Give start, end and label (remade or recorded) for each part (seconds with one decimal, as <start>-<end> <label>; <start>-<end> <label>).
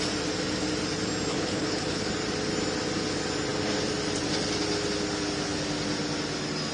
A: 0.0-1.3 recorded; 1.3-2.1 remade; 2.1-6.7 recorded